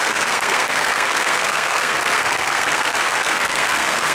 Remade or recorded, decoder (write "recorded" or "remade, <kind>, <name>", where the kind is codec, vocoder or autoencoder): remade, codec, SNAC